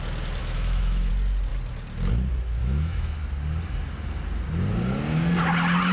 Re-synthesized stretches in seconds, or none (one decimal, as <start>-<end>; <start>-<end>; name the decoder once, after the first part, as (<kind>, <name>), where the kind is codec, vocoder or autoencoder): 0.4-1.1 (autoencoder, DAC-VAE); 2.6-3.2